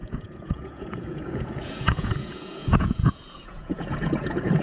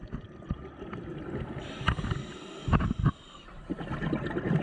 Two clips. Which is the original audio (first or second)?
second